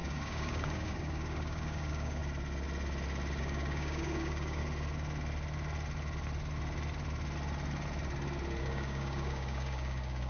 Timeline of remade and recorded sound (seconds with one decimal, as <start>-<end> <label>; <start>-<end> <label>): 0.0-2.2 remade; 2.2-3.4 recorded; 3.4-4.6 remade; 4.6-8.6 recorded; 8.6-10.3 remade